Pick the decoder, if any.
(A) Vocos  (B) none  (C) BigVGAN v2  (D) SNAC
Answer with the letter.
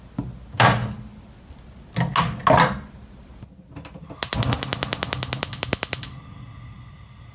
B